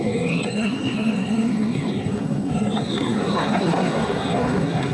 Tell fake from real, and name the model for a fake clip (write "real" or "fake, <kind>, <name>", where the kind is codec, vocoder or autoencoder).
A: fake, codec, SNAC